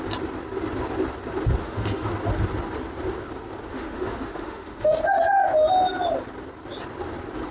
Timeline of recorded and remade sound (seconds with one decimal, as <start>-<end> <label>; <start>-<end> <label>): 0.0-1.6 recorded; 1.6-2.1 remade; 2.1-3.7 recorded; 3.7-5.0 remade; 5.0-7.5 recorded